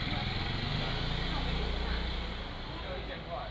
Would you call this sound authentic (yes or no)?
yes